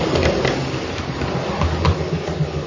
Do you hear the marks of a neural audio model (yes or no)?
no